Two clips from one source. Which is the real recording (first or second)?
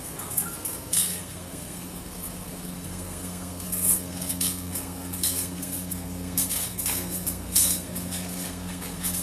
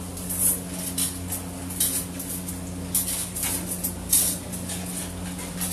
second